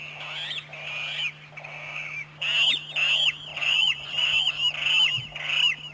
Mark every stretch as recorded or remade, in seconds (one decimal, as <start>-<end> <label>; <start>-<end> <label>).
0.0-3.5 recorded; 3.5-4.5 remade; 4.5-5.9 recorded